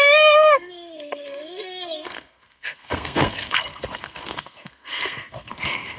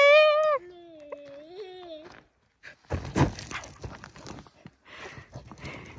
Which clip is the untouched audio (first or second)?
second